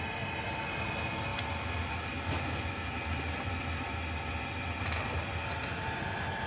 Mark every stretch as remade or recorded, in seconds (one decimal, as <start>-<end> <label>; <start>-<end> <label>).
0.0-6.5 recorded